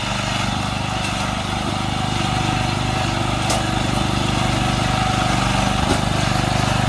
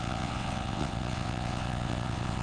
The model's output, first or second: second